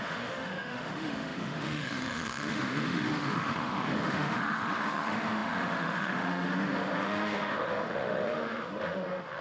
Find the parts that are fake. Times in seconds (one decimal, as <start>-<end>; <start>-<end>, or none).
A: 0.0-9.4